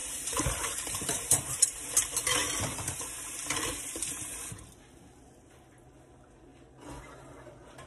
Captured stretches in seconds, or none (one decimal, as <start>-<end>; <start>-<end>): 1.9-7.9